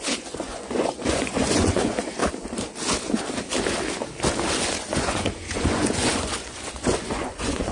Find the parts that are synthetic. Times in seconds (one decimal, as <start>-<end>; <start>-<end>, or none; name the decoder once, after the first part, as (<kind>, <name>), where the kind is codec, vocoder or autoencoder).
0.0-2.2 (vocoder, Vocos); 4.5-7.7